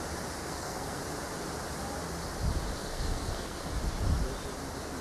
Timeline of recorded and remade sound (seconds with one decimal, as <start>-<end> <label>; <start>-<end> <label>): 0.0-0.4 recorded; 0.4-1.0 remade; 1.0-2.8 recorded; 2.8-3.7 remade; 3.7-5.0 recorded

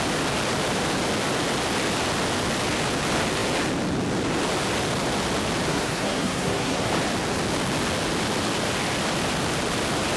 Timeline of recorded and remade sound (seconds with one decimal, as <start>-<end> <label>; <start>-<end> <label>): 0.0-5.7 recorded; 5.7-6.9 remade; 6.9-10.2 recorded

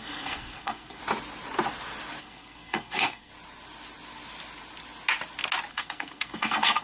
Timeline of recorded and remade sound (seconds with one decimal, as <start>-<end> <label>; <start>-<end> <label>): 0.0-1.0 remade; 1.0-2.2 recorded; 2.2-3.3 remade; 3.3-5.7 recorded; 5.7-6.8 remade

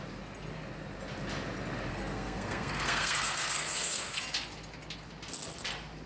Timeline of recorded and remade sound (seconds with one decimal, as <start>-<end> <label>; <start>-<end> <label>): 0.0-1.9 recorded; 1.9-4.2 remade; 4.2-6.1 recorded

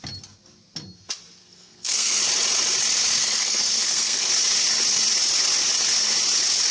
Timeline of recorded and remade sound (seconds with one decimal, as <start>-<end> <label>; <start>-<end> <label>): 0.0-1.4 recorded; 1.4-2.2 remade; 2.2-3.2 recorded; 3.2-4.3 remade; 4.3-6.7 recorded

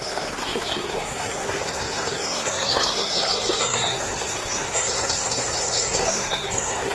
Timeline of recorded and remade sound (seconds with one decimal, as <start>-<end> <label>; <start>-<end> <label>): 0.0-6.9 remade

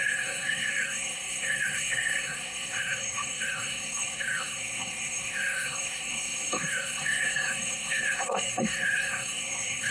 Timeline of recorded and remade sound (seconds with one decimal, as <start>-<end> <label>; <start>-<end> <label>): 0.0-9.9 remade

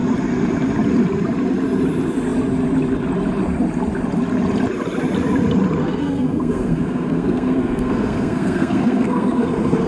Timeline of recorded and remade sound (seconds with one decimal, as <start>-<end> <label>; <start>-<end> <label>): 0.0-5.8 recorded; 5.8-9.9 remade